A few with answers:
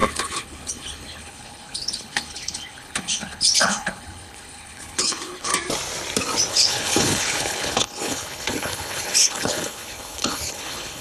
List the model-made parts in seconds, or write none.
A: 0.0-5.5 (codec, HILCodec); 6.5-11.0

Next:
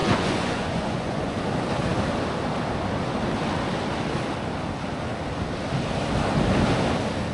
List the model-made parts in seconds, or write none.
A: 0.0-1.4 (vocoder, Vocos)

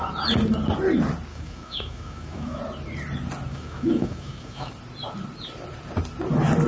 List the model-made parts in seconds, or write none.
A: 1.3-2.6 (autoencoder, DAC-VAE); 3.5-4.7

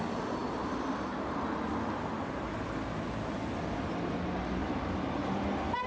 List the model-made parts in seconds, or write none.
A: 4.6-5.3 (vocoder, BigVGAN v2)